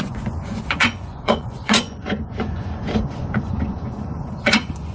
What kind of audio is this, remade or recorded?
remade